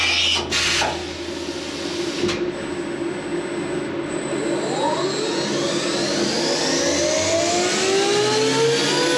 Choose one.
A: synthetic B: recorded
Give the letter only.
B